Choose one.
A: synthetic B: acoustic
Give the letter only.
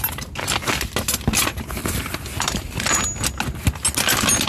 B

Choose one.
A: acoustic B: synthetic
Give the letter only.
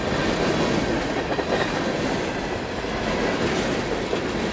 A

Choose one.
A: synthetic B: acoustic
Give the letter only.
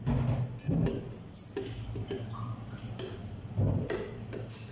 B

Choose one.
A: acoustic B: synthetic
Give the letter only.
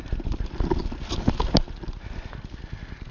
A